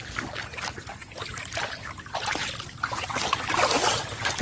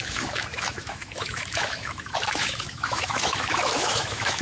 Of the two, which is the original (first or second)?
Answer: first